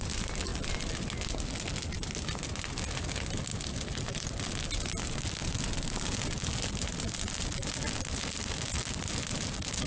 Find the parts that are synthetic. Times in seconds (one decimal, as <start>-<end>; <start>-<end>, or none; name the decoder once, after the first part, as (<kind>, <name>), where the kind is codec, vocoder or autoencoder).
none